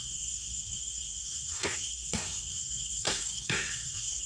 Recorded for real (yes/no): no